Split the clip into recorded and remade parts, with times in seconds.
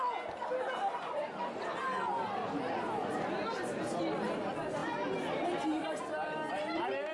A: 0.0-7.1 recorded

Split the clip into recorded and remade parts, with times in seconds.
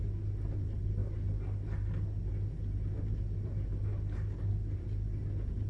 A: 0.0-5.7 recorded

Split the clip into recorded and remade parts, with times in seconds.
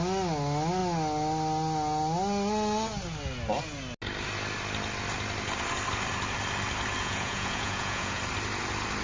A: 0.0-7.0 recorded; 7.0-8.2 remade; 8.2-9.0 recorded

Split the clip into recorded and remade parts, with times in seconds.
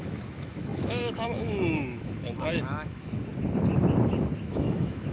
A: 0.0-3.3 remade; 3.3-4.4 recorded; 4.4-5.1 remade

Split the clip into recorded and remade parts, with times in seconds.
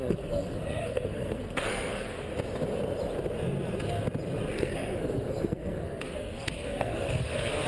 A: 0.0-2.3 remade; 2.3-4.5 recorded; 4.5-7.7 remade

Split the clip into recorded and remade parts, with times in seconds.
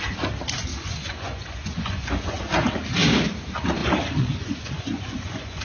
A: 0.0-0.7 recorded; 0.7-2.4 remade; 2.4-3.8 recorded; 3.8-5.6 remade